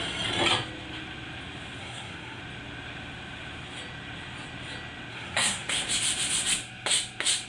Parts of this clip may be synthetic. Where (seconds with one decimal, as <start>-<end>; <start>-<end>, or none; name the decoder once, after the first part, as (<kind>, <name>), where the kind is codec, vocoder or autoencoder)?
1.8-2.4 (codec, SNAC); 5.1-5.7